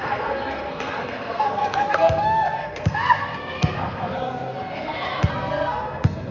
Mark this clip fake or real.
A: fake